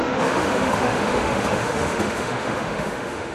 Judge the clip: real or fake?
fake